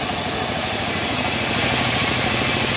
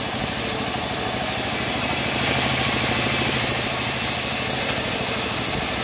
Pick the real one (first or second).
second